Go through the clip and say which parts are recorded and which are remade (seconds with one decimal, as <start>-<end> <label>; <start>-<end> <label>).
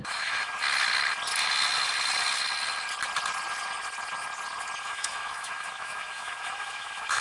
0.0-0.5 remade; 0.5-4.8 recorded; 4.8-7.2 remade